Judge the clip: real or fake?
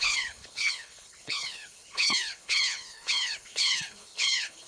fake